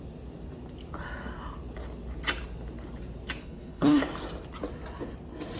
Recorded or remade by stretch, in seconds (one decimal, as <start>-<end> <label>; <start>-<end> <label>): 0.0-3.4 recorded; 3.4-4.0 remade; 4.0-5.6 recorded